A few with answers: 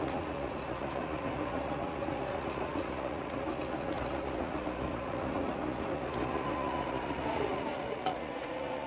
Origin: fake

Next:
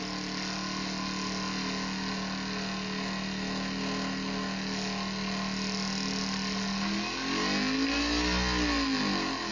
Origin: real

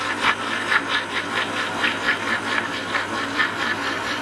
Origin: real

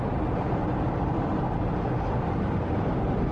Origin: real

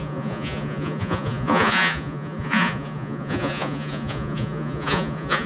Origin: fake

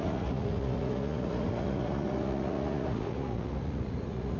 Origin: fake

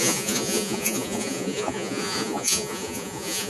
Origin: fake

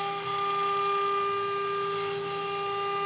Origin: real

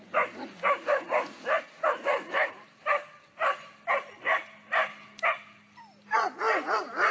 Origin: real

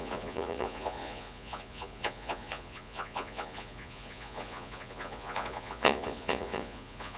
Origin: fake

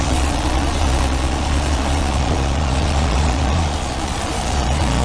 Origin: fake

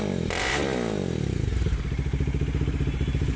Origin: real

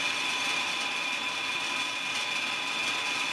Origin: real